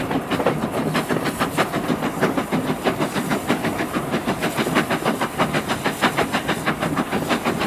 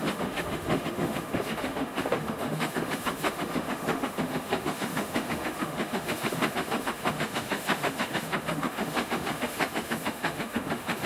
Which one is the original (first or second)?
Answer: first